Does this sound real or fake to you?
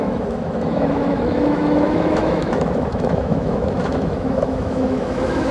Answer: fake